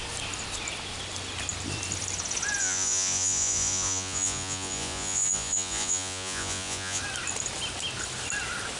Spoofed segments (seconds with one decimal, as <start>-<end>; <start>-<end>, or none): 2.6-7.0